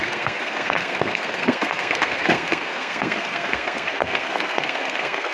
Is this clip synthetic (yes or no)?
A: yes